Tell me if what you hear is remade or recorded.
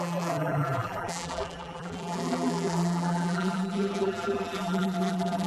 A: remade